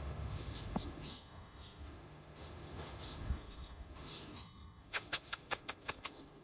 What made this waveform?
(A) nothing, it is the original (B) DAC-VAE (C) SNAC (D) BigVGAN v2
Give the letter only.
B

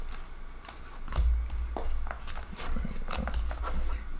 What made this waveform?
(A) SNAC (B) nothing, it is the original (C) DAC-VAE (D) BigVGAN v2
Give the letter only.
B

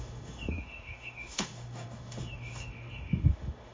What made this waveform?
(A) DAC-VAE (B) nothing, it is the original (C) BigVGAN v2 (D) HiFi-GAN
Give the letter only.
A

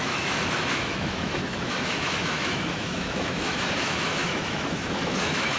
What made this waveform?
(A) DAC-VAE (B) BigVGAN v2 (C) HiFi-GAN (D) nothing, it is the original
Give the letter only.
A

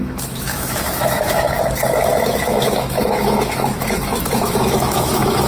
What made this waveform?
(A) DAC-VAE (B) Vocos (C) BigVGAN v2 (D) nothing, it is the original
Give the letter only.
A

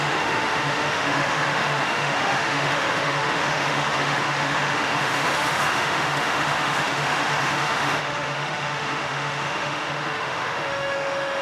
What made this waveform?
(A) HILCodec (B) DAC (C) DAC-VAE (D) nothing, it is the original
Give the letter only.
C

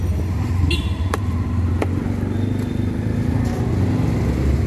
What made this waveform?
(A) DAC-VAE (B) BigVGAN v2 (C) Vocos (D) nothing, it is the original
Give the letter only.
D